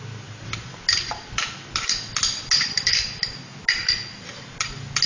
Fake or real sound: real